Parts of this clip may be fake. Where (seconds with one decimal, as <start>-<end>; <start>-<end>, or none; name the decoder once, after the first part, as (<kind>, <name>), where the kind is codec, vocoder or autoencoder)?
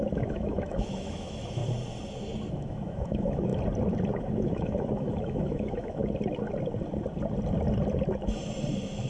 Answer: 0.0-1.6 (autoencoder, DAC-VAE); 2.5-3.5; 4.2-6.0